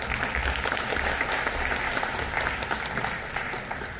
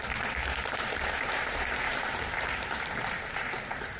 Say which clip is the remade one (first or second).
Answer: second